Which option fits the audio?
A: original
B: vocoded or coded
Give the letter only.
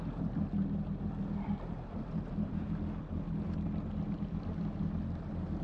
A